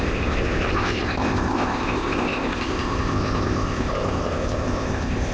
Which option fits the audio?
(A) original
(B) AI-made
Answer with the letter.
B